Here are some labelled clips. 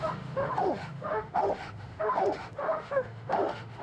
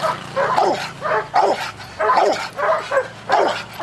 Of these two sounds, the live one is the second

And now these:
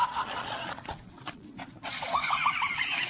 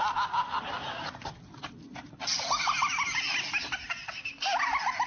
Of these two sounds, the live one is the second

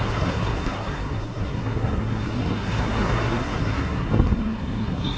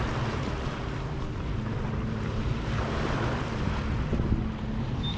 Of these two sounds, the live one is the second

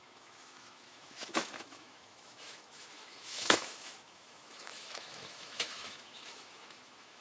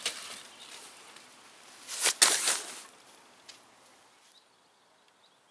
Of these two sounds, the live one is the second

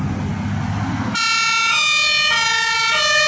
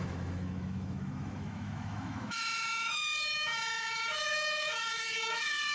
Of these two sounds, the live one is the first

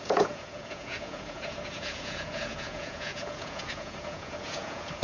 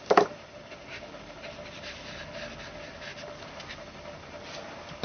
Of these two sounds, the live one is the second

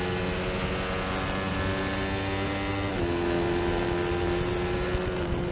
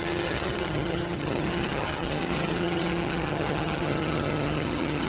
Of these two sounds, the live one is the first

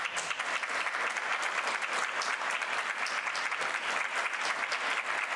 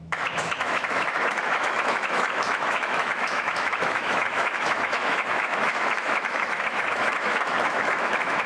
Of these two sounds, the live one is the first